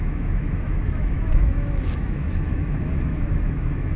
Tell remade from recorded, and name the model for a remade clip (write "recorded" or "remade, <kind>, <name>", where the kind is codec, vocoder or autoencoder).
remade, autoencoder, DAC-VAE